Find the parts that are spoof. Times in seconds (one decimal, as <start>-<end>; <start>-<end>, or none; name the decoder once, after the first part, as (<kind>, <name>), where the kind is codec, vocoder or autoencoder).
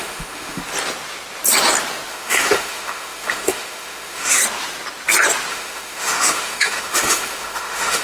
0.0-0.6 (autoencoder, DAC-VAE); 2.1-4.4; 5.5-8.0